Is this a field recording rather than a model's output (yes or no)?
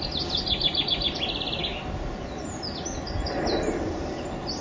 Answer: yes